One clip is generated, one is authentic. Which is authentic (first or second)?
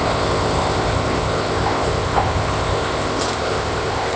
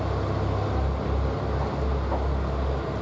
second